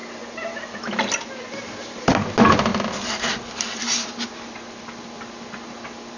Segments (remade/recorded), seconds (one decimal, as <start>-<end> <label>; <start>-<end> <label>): 0.0-6.2 recorded